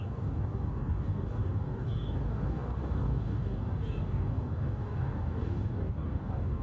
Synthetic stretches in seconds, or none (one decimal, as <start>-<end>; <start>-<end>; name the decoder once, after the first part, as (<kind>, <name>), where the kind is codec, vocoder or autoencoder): 0.0-6.6 (codec, DAC)